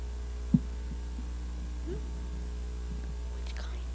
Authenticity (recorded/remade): recorded